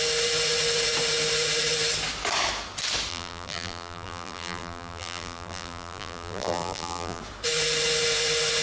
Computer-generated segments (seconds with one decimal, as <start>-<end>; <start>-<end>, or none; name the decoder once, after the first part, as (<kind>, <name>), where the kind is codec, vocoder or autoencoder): 3.1-7.2 (vocoder, BigVGAN v2)